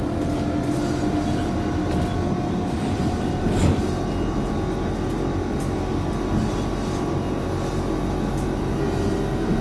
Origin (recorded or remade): recorded